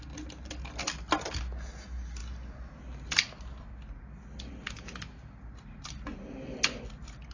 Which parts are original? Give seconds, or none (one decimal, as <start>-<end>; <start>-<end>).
0.0-7.3